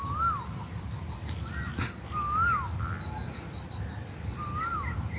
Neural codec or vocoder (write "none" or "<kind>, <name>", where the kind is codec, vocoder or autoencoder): none